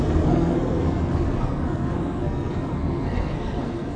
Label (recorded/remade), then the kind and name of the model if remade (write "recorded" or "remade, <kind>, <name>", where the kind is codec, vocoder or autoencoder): remade, codec, SNAC